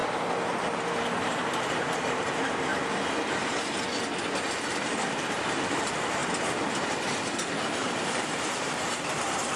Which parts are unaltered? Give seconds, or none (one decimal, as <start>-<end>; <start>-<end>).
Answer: 0.0-1.2; 2.7-4.7; 6.2-6.7